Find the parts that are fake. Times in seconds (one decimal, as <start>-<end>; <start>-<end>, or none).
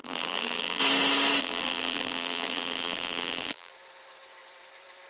0.0-0.8; 1.4-3.7